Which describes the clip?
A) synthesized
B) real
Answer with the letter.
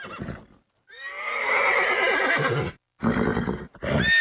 B